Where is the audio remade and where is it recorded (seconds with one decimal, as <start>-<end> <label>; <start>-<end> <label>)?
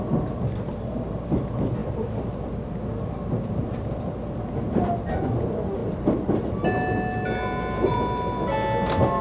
0.0-9.2 recorded